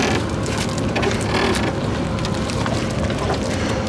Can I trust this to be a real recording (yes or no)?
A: yes